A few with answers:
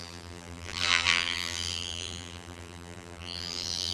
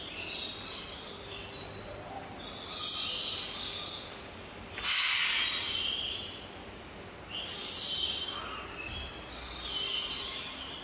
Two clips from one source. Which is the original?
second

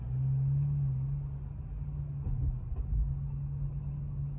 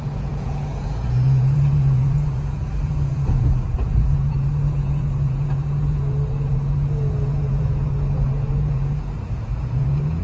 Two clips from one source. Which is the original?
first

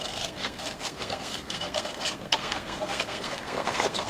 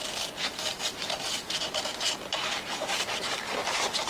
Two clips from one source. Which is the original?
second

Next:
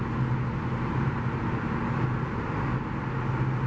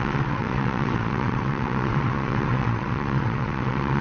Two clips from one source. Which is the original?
first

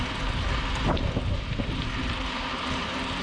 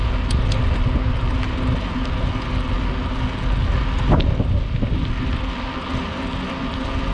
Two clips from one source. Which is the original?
second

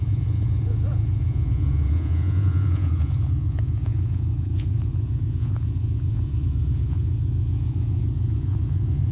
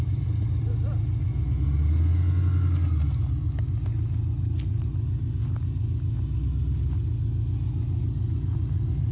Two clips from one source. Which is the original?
second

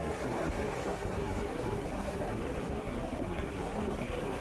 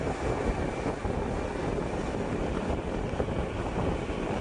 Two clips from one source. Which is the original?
second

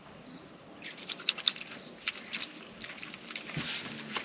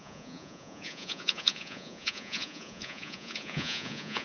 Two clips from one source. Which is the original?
first